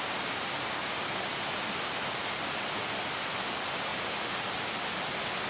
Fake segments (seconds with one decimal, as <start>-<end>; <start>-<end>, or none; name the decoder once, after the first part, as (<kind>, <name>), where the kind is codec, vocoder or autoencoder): none